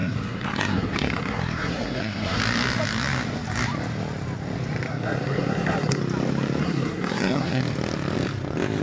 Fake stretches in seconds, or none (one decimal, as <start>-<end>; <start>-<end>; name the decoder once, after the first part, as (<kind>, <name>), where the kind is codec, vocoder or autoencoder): 0.0-2.4 (codec, SNAC); 4.9-6.0; 6.6-7.6